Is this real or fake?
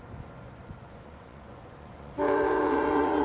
fake